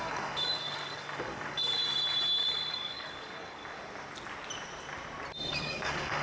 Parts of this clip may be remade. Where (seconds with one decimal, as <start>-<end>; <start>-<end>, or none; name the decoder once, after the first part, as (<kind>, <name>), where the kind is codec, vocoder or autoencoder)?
0.0-1.8 (codec, DAC); 2.7-3.6; 5.5-6.2